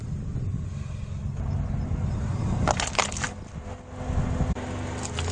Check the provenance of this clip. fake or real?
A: real